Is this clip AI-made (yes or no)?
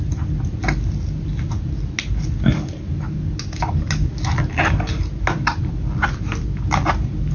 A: no